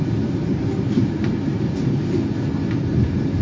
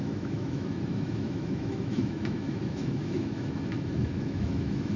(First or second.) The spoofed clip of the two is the second